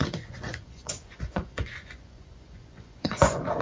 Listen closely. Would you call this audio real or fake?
fake